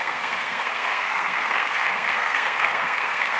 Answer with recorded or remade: remade